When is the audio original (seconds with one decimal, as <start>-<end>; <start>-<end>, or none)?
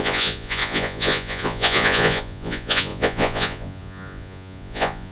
none